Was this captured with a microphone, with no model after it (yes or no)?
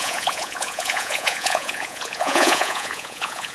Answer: no